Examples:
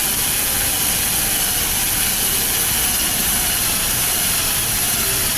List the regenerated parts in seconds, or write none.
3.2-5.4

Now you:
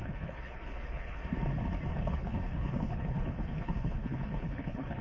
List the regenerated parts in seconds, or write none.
0.0-1.2; 1.9-5.0

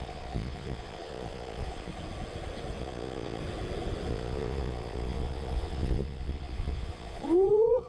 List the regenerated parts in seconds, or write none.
0.0-1.9; 2.8-3.4; 4.1-7.9

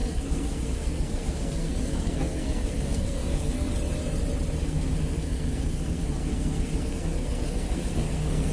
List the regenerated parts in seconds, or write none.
0.0-3.7; 4.6-8.5